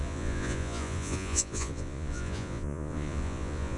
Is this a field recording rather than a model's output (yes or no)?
no